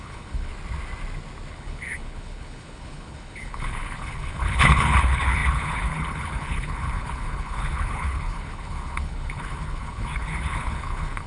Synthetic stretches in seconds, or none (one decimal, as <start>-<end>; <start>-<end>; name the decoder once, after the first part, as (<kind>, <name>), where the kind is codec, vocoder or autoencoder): 0.0-0.5 (codec, HILCodec); 1.5-11.3